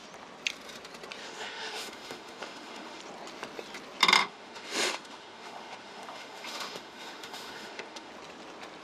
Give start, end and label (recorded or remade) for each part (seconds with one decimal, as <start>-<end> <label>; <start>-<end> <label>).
0.0-1.2 recorded; 1.2-3.0 remade; 3.0-4.2 recorded; 4.2-8.1 remade; 8.1-8.8 recorded